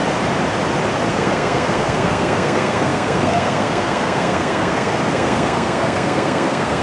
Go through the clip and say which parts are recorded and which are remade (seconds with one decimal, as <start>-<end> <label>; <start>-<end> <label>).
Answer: 0.0-1.1 recorded; 1.1-6.8 remade